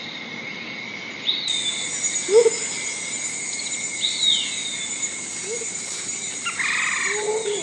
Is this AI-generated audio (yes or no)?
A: no